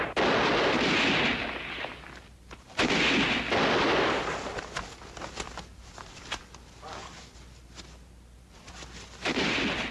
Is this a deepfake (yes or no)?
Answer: no